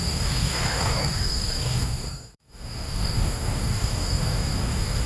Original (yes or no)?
no